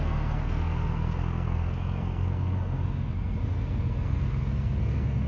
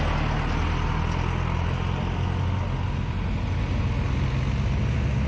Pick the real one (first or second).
second